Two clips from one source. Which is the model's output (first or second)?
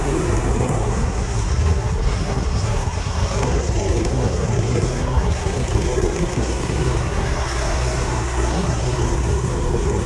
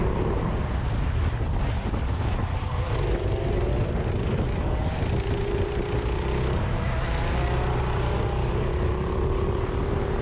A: first